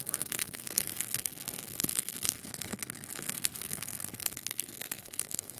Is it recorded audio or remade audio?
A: remade